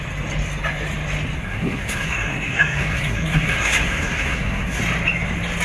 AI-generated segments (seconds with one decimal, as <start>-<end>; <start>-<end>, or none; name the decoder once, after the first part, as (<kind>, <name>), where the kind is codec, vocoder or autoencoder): 1.4-4.8 (codec, SNAC)